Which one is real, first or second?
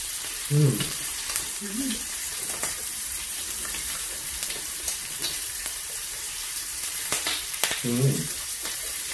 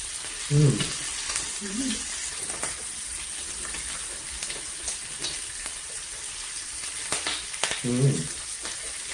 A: second